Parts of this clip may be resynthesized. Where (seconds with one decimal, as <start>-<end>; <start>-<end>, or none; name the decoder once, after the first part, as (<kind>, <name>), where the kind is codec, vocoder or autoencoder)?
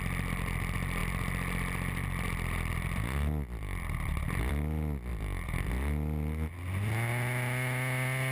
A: 1.0-4.5 (vocoder, BigVGAN v2); 5.1-5.7